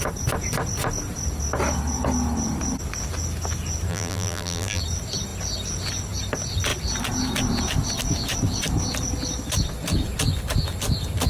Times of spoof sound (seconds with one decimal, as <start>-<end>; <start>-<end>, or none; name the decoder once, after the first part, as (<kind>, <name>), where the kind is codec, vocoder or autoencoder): 3.9-4.8 (vocoder, BigVGAN v2)